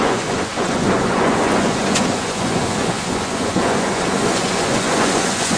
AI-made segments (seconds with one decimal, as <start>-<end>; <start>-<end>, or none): 0.0-5.6